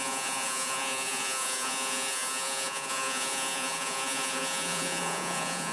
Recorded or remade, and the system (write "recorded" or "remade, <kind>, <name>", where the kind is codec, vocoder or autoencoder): remade, vocoder, Vocos